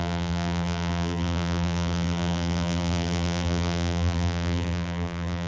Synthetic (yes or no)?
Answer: yes